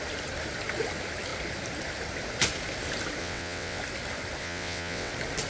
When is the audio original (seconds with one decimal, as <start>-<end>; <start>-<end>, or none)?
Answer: 0.0-3.2; 3.8-4.4; 5.1-5.5